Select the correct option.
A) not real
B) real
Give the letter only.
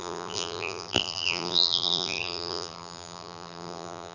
A